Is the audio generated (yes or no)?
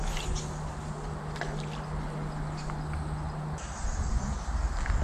no